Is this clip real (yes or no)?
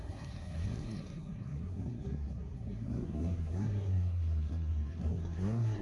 no